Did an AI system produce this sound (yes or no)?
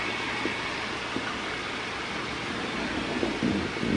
no